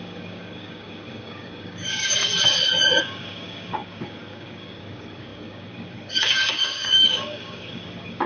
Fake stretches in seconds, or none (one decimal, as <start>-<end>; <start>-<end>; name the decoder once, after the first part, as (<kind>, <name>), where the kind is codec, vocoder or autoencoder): 0.0-2.3 (codec, DAC); 3.0-8.3